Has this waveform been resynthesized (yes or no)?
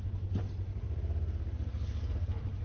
no